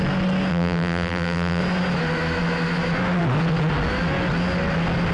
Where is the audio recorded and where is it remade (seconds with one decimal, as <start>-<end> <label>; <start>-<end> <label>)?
0.0-0.5 recorded; 0.5-1.6 remade; 1.6-5.1 recorded